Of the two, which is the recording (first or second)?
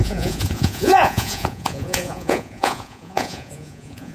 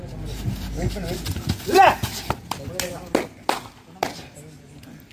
second